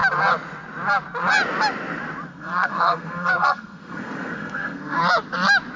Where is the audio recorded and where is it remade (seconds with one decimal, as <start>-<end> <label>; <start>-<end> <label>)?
0.0-2.3 recorded; 2.3-5.0 remade; 5.0-5.8 recorded